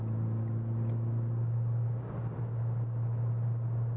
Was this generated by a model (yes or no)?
no